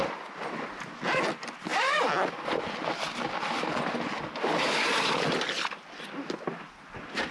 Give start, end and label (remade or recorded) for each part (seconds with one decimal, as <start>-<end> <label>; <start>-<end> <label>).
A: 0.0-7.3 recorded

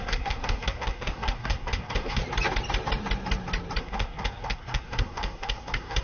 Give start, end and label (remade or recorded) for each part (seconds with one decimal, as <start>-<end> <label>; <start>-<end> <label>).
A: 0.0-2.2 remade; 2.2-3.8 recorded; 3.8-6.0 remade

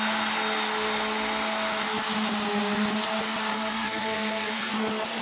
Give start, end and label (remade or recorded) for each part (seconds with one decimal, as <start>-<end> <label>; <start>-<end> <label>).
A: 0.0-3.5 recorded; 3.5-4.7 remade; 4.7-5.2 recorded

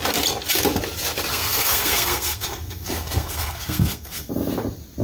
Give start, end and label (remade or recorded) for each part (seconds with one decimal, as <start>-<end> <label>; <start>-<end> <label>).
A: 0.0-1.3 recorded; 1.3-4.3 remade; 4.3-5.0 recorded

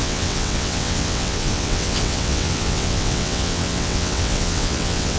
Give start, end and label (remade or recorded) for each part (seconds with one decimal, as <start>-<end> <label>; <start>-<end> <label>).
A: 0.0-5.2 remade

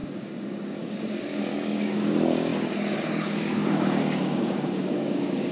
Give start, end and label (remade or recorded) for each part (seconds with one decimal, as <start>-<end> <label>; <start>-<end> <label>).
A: 0.0-5.5 remade

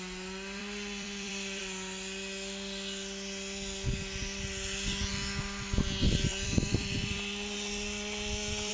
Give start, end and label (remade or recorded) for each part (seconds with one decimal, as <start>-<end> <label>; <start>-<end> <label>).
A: 0.0-0.6 recorded; 0.6-1.6 remade; 1.6-4.2 recorded; 4.2-5.1 remade; 5.1-6.3 recorded; 6.3-8.7 remade

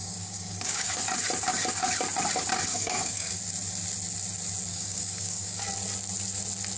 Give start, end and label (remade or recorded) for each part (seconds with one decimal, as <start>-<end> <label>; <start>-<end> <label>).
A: 0.0-1.0 remade; 1.0-2.7 recorded; 2.7-3.4 remade; 3.4-4.7 recorded; 4.7-5.6 remade; 5.6-6.8 recorded